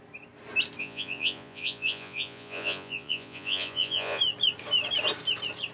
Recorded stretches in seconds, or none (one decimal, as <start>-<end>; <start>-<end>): 0.0-0.8; 4.2-5.7